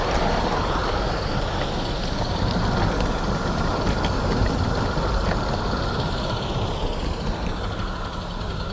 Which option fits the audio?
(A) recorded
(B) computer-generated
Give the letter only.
A